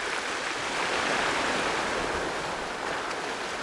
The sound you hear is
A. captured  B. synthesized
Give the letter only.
A